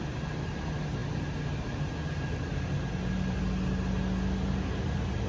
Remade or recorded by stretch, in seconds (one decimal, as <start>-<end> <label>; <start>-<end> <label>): 0.0-5.3 recorded